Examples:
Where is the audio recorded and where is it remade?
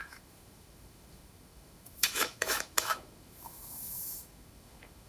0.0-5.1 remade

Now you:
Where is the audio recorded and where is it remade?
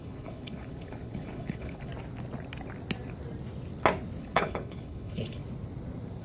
0.0-1.9 remade; 1.9-4.2 recorded; 4.2-5.4 remade; 5.4-6.2 recorded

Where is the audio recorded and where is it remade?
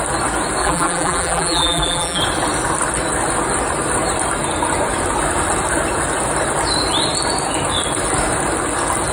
0.0-0.6 recorded; 0.6-2.2 remade; 2.2-9.1 recorded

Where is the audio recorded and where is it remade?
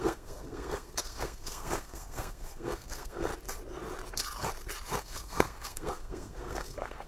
0.0-3.3 remade; 3.3-5.0 recorded; 5.0-7.1 remade